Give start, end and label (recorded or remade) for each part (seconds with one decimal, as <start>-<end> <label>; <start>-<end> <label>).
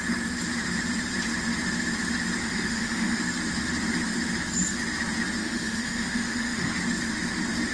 0.0-2.4 recorded; 2.4-3.2 remade; 3.2-5.4 recorded; 5.4-6.7 remade; 6.7-7.7 recorded